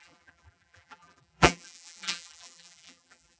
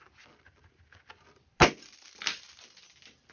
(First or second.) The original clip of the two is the second